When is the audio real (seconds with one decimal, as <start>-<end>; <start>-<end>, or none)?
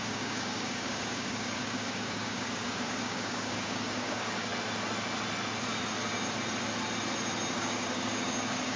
4.5-7.5